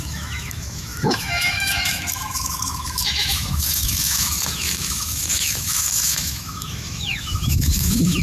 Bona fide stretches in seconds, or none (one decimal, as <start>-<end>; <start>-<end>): none